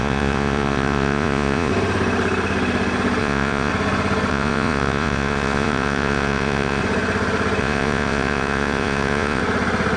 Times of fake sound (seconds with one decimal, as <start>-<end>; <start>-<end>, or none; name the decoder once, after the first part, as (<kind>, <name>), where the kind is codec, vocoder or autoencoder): 0.0-1.7 (vocoder, Vocos); 3.2-3.7; 4.3-6.8; 7.6-9.4